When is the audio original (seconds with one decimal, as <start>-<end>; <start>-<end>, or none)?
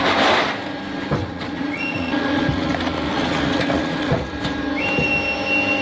0.0-1.2; 4.3-5.8